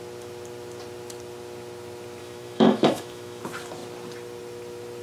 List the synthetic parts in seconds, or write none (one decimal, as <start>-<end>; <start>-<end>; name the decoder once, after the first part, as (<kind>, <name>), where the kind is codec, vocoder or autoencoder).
2.2-3.4 (autoencoder, DAC-VAE)